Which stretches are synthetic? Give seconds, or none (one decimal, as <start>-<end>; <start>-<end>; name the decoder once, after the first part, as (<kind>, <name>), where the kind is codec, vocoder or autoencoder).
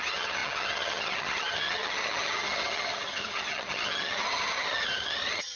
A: 0.0-5.6 (vocoder, HiFi-GAN)